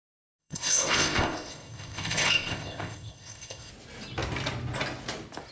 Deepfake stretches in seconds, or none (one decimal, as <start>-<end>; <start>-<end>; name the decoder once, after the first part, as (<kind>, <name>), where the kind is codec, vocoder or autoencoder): 0.4-3.7 (codec, ZipCodec)